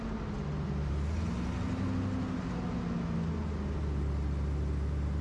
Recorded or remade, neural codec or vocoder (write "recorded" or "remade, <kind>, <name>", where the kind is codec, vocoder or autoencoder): recorded